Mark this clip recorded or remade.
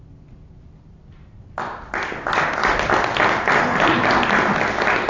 recorded